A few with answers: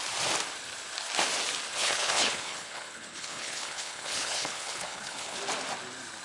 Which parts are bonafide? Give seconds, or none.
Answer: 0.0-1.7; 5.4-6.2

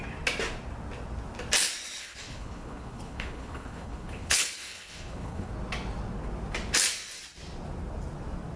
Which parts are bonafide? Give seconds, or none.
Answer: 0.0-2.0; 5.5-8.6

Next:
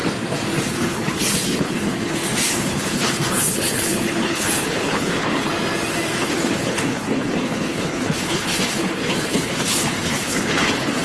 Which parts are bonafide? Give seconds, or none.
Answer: 0.0-0.7; 5.5-6.2

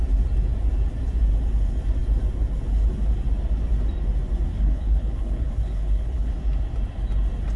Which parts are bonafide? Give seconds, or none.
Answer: 0.0-4.5; 6.3-7.6

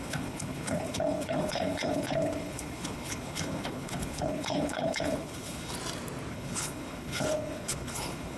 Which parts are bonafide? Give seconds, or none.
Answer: 5.7-6.3

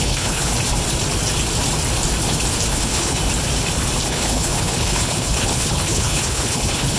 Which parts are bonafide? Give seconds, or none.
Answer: 0.5-2.7; 3.2-4.1

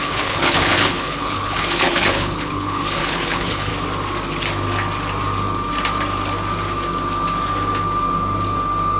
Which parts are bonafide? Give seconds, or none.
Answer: 3.7-9.0

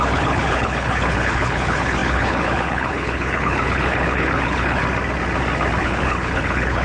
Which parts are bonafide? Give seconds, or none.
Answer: 4.8-5.8